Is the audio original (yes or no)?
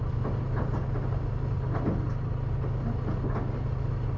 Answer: yes